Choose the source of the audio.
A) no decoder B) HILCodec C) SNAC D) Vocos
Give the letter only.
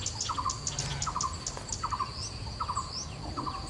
A